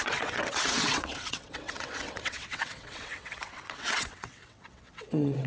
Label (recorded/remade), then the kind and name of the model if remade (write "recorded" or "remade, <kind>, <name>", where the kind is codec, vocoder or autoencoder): remade, vocoder, WaveNeXt